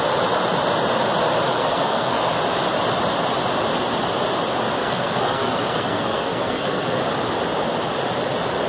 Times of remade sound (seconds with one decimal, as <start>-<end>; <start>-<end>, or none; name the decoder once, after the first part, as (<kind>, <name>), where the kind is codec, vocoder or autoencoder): 1.5-2.3 (codec, SNAC); 4.8-7.0